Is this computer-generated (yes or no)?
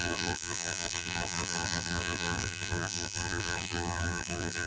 yes